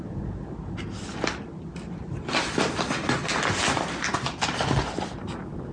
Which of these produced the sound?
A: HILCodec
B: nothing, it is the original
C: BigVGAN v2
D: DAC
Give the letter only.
B